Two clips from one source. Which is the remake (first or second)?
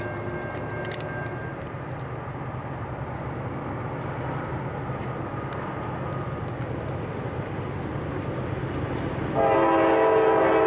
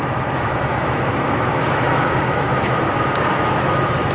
second